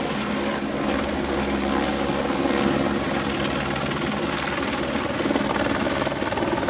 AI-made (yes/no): no